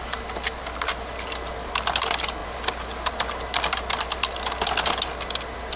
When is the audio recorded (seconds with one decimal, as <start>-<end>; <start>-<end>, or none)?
0.0-5.8